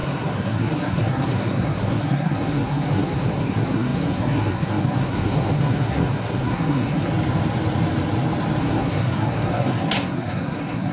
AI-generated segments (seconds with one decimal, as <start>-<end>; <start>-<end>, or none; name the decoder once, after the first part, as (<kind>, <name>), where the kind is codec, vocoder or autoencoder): 0.0-7.1 (codec, SNAC); 8.6-10.9